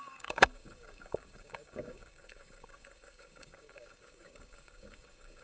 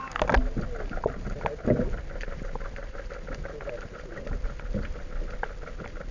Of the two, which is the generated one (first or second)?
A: first